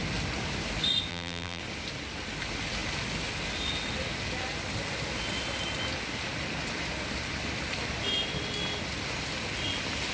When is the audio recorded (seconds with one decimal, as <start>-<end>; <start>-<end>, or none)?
0.0-1.1; 1.6-10.1